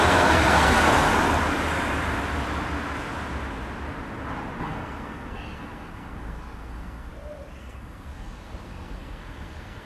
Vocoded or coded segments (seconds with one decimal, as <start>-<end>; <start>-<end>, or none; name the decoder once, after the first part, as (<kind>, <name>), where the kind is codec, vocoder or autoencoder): 0.0-1.1 (codec, SNAC); 4.6-7.1; 7.6-9.9